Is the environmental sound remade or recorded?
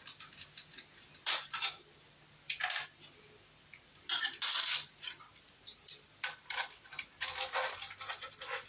recorded